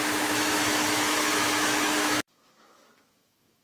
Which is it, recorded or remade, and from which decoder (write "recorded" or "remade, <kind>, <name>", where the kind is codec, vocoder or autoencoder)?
remade, autoencoder, DAC-VAE